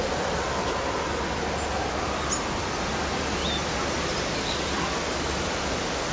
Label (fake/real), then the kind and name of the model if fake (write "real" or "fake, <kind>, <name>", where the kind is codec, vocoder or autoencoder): real